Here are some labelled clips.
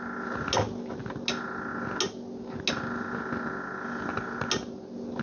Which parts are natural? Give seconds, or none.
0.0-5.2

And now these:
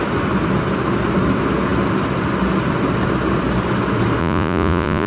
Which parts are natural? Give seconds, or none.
0.0-4.2

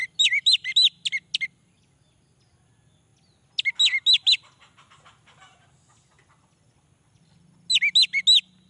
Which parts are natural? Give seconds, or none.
0.0-8.7

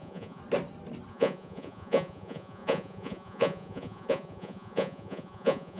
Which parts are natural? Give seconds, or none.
0.4-1.1

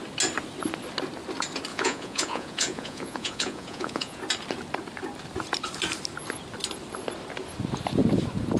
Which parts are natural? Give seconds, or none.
0.0-1.7; 4.2-8.6

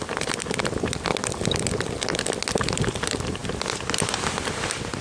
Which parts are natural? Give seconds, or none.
0.0-5.0

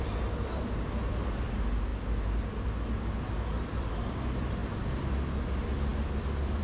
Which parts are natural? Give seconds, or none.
0.0-6.6